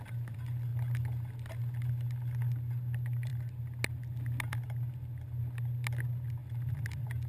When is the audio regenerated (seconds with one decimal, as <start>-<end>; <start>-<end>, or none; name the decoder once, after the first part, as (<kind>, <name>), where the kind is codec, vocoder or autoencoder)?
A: none